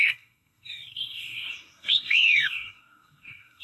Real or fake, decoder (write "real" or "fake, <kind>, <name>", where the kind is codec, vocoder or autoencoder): fake, codec, SNAC